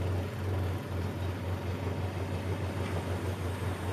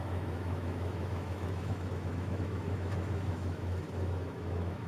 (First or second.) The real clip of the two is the first